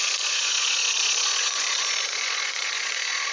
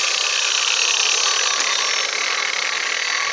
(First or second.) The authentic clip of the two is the second